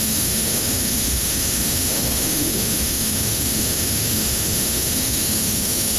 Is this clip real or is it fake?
fake